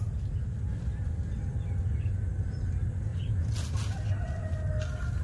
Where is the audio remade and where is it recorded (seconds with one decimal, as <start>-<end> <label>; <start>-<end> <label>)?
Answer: 0.0-5.2 recorded